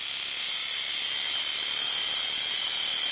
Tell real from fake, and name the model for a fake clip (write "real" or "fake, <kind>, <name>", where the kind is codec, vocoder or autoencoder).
fake, vocoder, BigVGAN v2